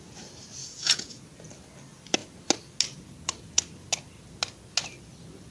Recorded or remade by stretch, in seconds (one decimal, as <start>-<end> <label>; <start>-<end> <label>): 0.0-0.6 recorded; 0.6-1.2 remade; 1.2-5.5 recorded